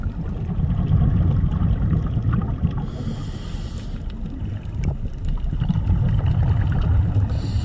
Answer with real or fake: real